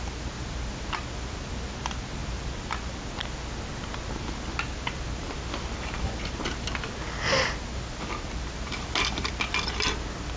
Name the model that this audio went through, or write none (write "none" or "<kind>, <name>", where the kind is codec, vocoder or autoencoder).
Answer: none